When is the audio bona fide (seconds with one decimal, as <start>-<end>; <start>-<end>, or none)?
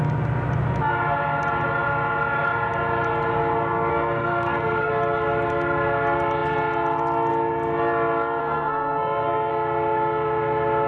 0.0-3.9; 4.9-8.4; 9.5-10.9